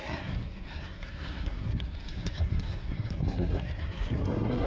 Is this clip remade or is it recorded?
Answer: remade